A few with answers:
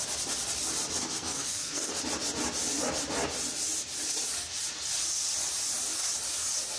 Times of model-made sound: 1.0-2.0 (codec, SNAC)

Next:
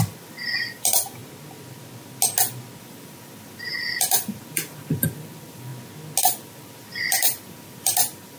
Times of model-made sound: 0.0-1.2 (vocoder, BigVGAN v2); 2.8-5.7; 6.2-8.4

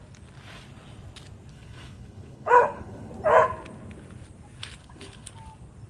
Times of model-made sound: 1.5-3.1 (codec, HILCodec); 4.8-5.3

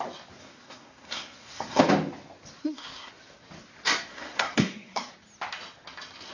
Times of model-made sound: 0.4-1.8 (codec, SNAC); 2.6-3.1; 4.1-5.1

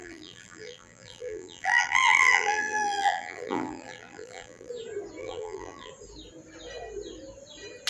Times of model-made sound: 0.0-4.7 (vocoder, BigVGAN v2); 5.2-5.9

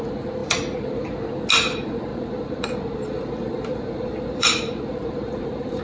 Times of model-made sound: 2.1-5.8 (vocoder, BigVGAN v2)

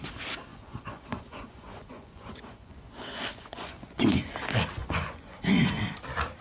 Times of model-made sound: 0.5-4.3 (vocoder, Vocos); 4.8-5.8

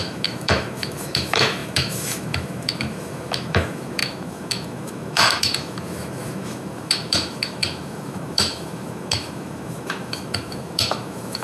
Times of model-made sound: 0.0-11.4 (autoencoder, DAC-VAE)